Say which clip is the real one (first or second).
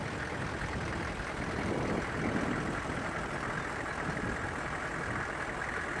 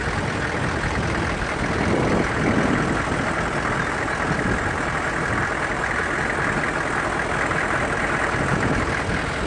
second